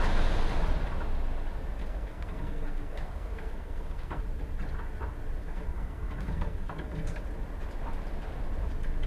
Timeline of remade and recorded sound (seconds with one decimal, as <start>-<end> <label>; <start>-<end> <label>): 0.0-1.8 recorded; 1.8-4.2 remade; 4.2-5.4 recorded; 5.4-7.2 remade; 7.2-9.1 recorded